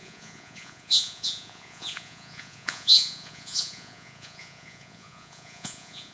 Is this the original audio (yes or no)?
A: no